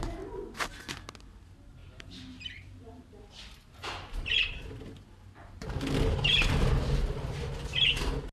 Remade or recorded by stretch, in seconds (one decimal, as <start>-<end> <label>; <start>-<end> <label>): 0.0-1.8 recorded; 1.8-3.0 remade; 3.0-3.8 recorded; 3.8-4.8 remade; 4.8-8.3 recorded